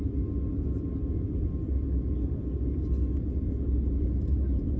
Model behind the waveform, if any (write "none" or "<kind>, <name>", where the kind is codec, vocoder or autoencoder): none